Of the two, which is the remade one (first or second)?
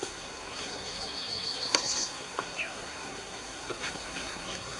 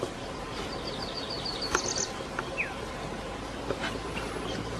first